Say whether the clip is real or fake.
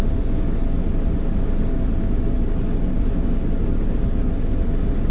real